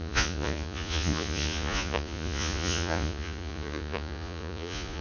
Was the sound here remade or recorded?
remade